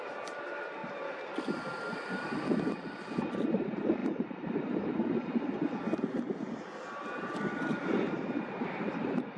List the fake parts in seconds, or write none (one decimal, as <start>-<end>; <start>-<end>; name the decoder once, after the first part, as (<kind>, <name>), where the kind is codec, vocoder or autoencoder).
4.0-4.6 (vocoder, BigVGAN v2)